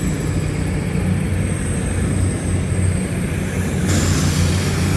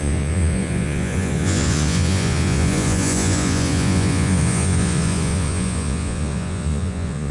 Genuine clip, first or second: first